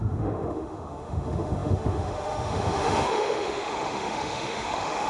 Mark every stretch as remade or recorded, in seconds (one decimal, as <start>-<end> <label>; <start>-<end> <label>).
0.0-5.1 remade